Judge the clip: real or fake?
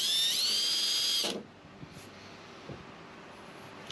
real